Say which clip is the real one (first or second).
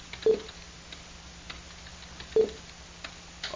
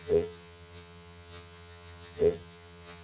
first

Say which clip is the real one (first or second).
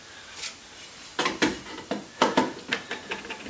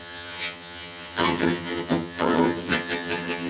first